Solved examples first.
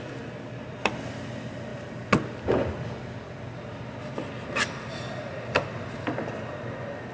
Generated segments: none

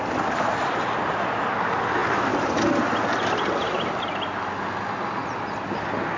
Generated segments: none